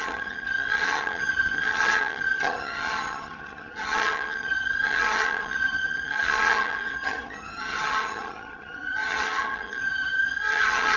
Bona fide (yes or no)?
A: no